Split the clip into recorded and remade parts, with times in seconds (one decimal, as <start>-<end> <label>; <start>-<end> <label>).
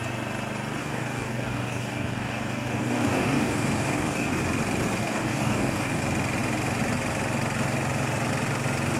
0.0-0.8 recorded; 0.8-4.4 remade; 4.4-5.0 recorded; 5.0-6.0 remade; 6.0-9.0 recorded